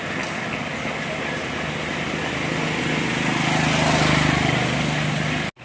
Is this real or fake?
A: real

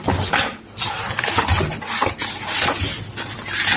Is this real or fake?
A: real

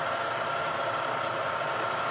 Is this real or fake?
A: real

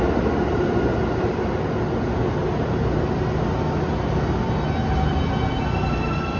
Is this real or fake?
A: real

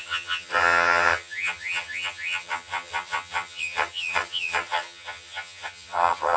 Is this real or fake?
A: fake